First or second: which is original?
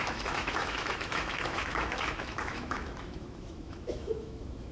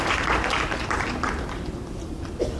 second